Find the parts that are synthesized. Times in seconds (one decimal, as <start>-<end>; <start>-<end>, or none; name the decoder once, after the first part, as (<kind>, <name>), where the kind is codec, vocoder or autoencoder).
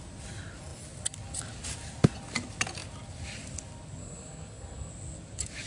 4.0-4.9 (codec, SNAC)